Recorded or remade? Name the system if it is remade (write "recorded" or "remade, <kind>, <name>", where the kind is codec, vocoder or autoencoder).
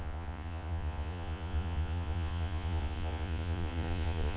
remade, vocoder, Vocos